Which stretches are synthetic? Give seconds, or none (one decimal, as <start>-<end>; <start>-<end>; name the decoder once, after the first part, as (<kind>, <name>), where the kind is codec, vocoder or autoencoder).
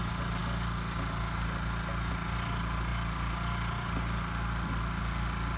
none